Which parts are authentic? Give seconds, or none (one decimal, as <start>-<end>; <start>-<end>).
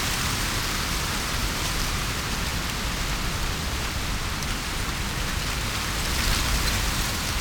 0.0-1.4; 2.0-7.4